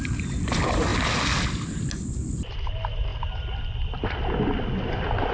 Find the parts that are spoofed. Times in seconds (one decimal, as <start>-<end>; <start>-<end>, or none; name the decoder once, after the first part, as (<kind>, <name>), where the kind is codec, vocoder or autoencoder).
0.0-0.9 (vocoder, BigVGAN v2); 2.5-3.1; 4.8-5.3